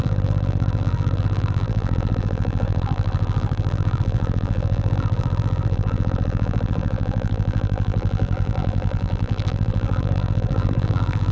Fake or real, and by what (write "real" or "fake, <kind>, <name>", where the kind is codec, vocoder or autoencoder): fake, vocoder, BigVGAN v2